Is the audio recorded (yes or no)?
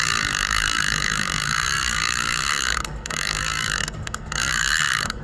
no